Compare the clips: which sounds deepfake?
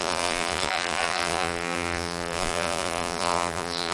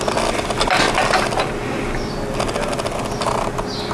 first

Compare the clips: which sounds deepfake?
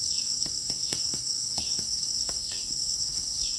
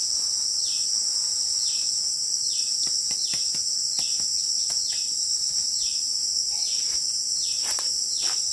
first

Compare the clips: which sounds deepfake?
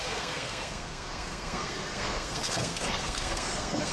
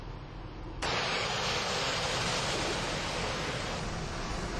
first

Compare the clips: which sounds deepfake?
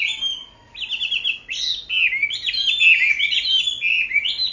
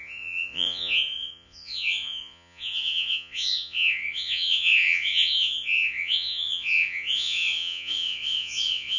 second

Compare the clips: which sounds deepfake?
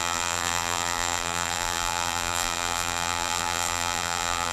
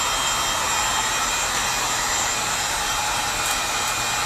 first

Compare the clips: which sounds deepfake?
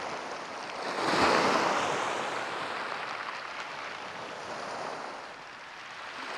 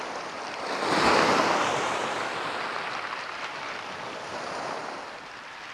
second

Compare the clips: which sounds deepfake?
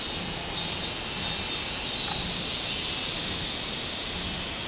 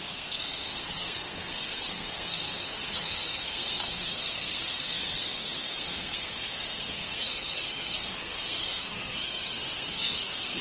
second